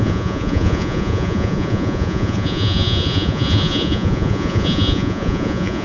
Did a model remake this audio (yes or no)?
yes